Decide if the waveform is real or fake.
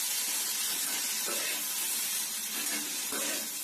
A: real